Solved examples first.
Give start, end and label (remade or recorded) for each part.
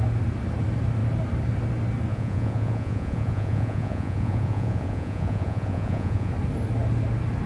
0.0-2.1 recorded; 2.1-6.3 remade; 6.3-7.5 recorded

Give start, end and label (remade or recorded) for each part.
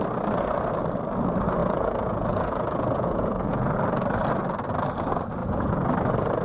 0.0-1.6 recorded; 1.6-3.7 remade; 3.7-5.4 recorded; 5.4-5.9 remade; 5.9-6.4 recorded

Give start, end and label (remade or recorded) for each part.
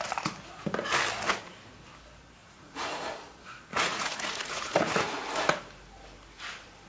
0.0-2.4 recorded; 2.4-3.1 remade; 3.1-3.7 recorded; 3.7-5.2 remade; 5.2-6.9 recorded